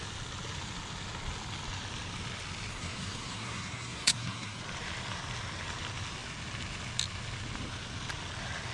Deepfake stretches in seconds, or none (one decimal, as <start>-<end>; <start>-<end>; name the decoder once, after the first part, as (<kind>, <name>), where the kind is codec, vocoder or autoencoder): 2.7-4.6 (codec, SNAC)